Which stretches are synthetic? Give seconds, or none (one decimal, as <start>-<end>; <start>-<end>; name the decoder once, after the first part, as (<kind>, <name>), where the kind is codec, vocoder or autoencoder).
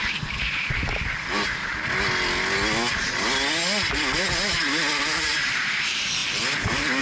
0.0-1.7 (vocoder, BigVGAN v2); 5.0-6.2